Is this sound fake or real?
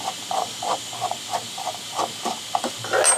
real